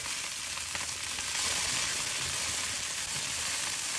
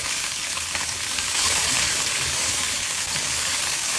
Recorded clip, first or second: first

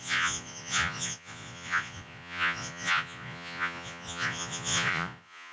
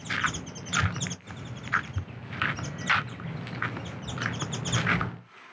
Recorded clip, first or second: second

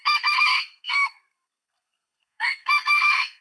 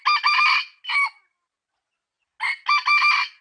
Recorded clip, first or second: second